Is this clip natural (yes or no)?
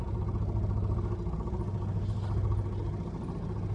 yes